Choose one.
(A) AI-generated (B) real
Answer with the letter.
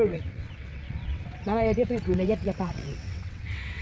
A